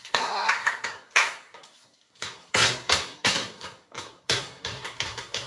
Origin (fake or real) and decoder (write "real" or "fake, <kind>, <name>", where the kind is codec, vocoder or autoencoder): fake, codec, SNAC